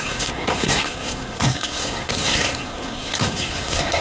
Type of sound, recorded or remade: remade